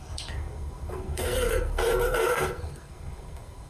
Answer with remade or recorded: remade